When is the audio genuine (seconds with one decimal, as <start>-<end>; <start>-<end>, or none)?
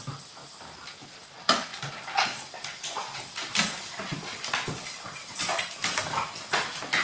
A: 0.0-7.0